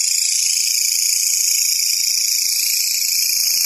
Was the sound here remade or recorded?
recorded